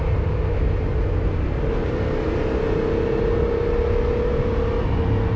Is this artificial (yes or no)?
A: no